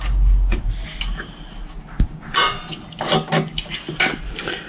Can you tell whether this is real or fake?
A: real